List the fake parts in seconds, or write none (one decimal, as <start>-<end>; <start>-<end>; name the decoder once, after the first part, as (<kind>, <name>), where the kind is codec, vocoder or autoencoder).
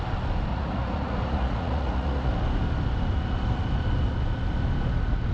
0.5-2.3 (vocoder, Vocos)